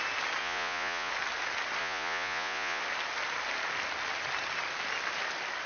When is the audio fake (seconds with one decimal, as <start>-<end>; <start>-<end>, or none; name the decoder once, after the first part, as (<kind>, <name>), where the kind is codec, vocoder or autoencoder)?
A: 0.4-1.1 (vocoder, Vocos); 1.8-2.8